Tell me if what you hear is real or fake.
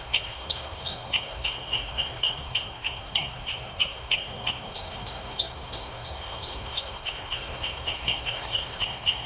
fake